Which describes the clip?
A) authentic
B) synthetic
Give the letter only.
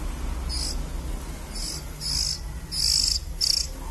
A